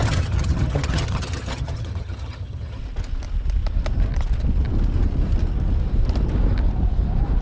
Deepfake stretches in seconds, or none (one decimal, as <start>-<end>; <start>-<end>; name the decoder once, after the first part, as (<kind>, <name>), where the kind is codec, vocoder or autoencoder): 0.0-2.8 (vocoder, HiFi-GAN)